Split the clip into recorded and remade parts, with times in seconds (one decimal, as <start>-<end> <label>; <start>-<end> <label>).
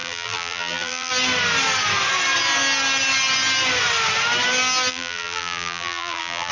0.0-1.1 remade; 1.1-4.9 recorded; 4.9-6.5 remade